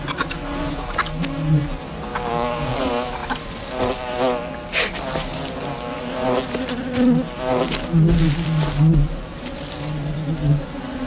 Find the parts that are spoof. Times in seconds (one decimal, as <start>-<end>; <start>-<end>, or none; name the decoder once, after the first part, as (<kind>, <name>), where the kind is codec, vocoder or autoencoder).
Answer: 2.1-2.8 (codec, DAC)

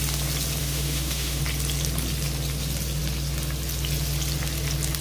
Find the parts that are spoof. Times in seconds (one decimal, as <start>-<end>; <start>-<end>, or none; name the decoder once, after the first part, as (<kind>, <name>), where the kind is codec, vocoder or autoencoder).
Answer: 0.6-1.4 (autoencoder, DAC-VAE)

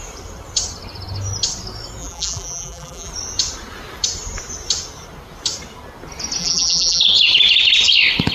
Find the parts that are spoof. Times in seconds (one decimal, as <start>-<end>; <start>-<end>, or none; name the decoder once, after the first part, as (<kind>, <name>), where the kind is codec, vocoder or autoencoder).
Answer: 2.0-3.1 (vocoder, BigVGAN v2); 6.4-7.0

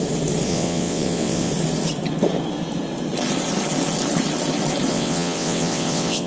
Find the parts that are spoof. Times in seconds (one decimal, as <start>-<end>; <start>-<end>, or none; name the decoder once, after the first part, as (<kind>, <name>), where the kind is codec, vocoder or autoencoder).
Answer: 0.5-1.5 (vocoder, WaveNeXt); 4.9-6.3